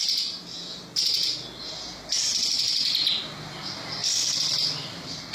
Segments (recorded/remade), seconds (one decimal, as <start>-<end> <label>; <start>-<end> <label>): 0.0-4.0 recorded; 4.0-5.3 remade